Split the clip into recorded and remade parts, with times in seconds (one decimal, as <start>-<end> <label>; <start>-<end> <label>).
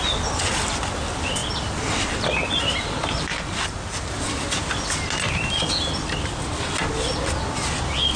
0.0-8.2 recorded